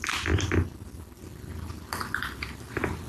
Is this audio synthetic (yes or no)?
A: no